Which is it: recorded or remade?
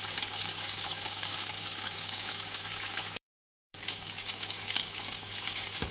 remade